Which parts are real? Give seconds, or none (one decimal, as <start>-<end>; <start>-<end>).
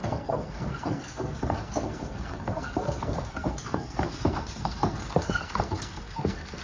none